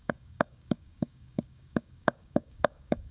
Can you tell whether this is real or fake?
fake